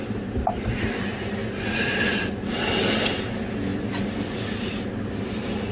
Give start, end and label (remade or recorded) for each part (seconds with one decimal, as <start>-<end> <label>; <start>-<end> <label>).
0.0-5.7 recorded